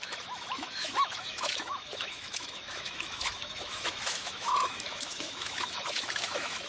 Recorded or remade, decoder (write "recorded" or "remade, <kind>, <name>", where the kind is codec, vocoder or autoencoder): remade, autoencoder, DAC-VAE